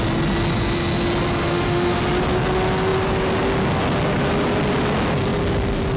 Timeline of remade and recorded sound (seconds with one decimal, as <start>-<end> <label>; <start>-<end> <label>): 0.0-1.5 recorded; 1.5-2.0 remade; 2.0-6.0 recorded